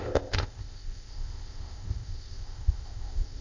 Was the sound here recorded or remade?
remade